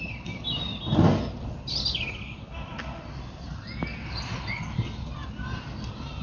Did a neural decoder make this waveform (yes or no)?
no